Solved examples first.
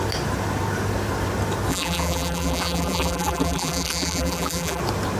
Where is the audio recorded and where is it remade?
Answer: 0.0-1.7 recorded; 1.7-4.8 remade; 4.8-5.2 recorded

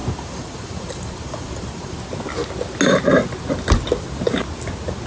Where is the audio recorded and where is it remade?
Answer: 0.0-2.0 remade; 2.0-5.1 recorded

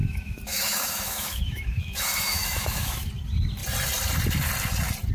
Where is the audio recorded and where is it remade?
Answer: 0.0-3.1 remade; 3.1-5.1 recorded

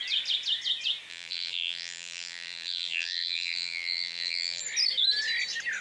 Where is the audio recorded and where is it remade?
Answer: 0.0-1.1 recorded; 1.1-4.6 remade; 4.6-5.8 recorded

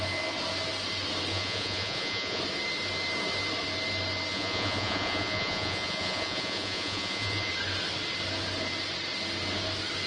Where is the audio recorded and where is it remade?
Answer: 0.0-1.3 recorded; 1.3-2.4 remade; 2.4-4.3 recorded; 4.3-7.5 remade; 7.5-10.1 recorded

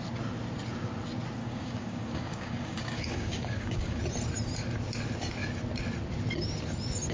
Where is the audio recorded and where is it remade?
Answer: 0.0-1.4 recorded; 1.4-4.0 remade; 4.0-7.1 recorded

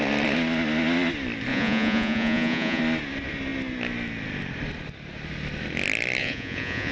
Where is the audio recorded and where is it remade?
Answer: 0.0-1.5 recorded; 1.5-2.8 remade; 2.8-6.2 recorded; 6.2-6.9 remade

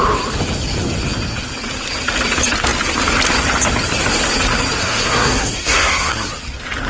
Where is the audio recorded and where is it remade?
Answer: 0.0-4.8 recorded; 4.8-6.3 remade; 6.3-6.9 recorded